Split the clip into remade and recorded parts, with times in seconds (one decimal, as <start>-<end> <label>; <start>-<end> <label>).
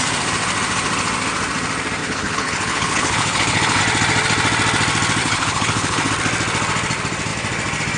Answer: 0.0-2.0 recorded; 2.0-3.8 remade; 3.8-5.2 recorded; 5.2-6.1 remade; 6.1-8.0 recorded